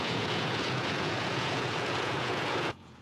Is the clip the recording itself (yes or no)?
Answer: no